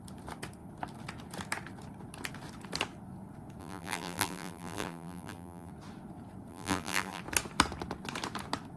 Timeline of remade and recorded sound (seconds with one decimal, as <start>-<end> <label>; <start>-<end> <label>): 0.0-3.6 recorded; 3.6-5.7 remade; 5.7-6.5 recorded; 6.5-7.2 remade; 7.2-8.8 recorded